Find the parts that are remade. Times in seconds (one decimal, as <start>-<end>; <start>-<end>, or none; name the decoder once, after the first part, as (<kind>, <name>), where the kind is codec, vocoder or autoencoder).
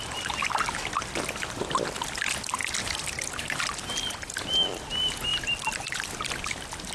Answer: none